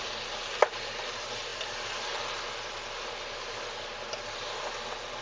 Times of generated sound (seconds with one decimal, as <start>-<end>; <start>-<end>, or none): none